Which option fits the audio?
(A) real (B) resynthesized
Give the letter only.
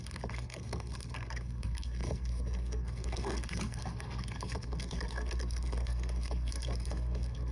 B